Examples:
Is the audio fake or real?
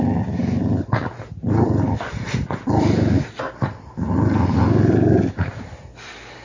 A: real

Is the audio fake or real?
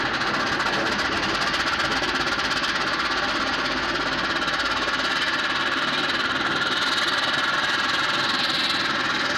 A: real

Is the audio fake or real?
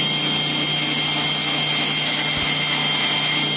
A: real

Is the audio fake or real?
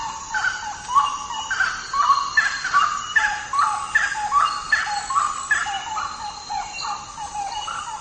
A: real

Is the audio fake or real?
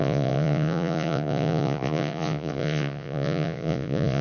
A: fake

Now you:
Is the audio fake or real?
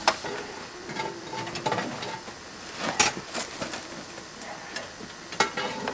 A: real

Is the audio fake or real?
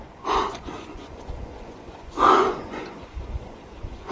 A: fake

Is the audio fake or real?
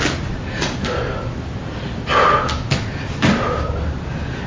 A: real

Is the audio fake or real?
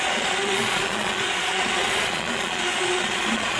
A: fake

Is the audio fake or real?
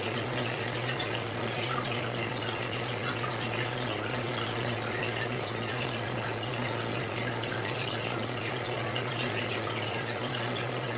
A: fake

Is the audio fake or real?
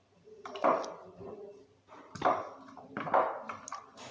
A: real